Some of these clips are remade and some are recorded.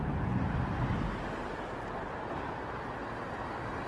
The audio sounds recorded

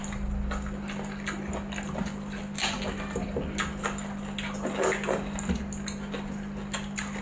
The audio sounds recorded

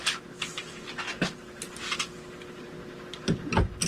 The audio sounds recorded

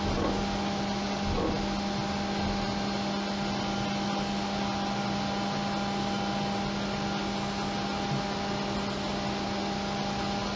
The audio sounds recorded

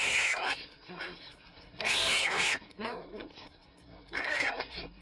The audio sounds remade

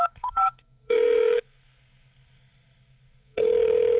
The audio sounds remade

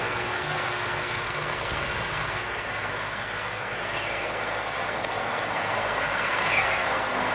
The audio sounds remade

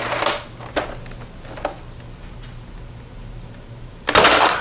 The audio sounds recorded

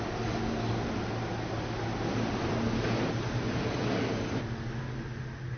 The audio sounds recorded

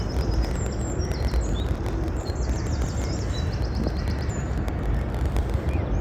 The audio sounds recorded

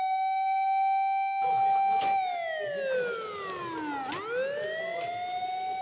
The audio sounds recorded